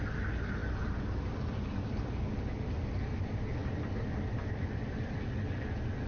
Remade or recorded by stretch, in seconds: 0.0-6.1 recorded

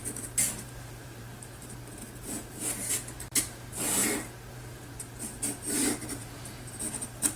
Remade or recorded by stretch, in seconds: 0.0-4.0 remade; 4.0-4.5 recorded; 4.5-7.4 remade

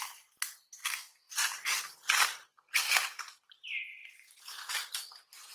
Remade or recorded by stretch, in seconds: 0.0-0.8 recorded; 0.8-1.3 remade; 1.3-5.5 recorded

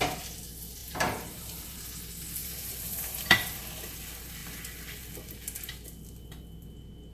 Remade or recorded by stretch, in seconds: 0.0-0.8 recorded; 0.8-1.8 remade; 1.8-2.4 recorded; 2.4-3.6 remade; 3.6-7.1 recorded

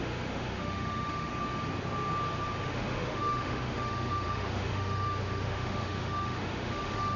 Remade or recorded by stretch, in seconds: 0.0-1.3 remade; 1.3-2.6 recorded; 2.6-7.2 remade